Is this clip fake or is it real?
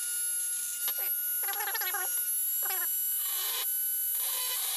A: real